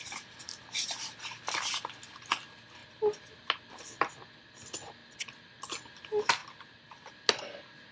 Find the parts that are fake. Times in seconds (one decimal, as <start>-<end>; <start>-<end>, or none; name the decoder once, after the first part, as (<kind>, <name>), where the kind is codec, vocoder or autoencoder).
none